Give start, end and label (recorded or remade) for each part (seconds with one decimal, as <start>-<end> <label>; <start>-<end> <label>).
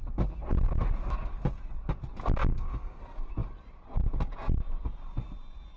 0.0-2.5 recorded; 2.5-3.0 remade; 3.0-5.8 recorded